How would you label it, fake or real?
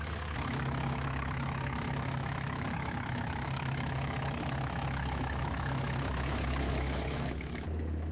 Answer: fake